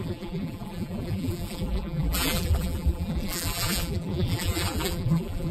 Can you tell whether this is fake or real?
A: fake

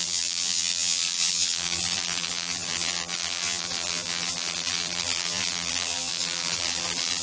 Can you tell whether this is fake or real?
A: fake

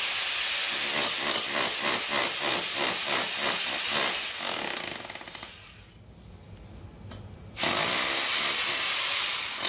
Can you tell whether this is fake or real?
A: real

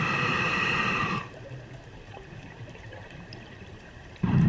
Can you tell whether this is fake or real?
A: fake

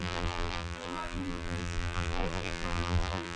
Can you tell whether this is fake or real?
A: fake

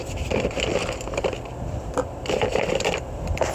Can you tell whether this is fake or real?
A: fake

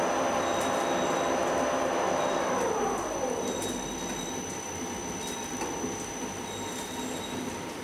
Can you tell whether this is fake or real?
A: real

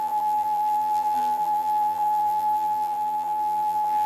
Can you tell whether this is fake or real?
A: fake